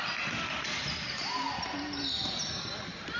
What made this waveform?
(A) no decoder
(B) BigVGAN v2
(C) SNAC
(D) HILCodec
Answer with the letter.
A